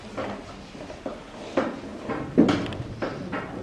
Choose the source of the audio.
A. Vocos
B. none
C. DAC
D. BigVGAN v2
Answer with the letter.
B